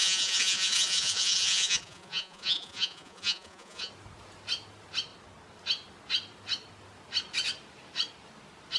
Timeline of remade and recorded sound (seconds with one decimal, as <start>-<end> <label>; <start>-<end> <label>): 0.0-3.9 remade; 3.9-8.8 recorded